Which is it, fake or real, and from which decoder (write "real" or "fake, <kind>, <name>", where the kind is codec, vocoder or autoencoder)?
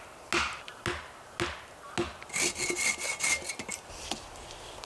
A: real